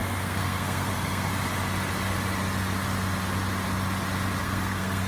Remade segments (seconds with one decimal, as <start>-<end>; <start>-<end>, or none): 0.0-1.3; 4.4-5.1